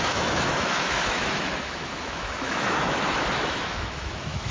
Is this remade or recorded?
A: remade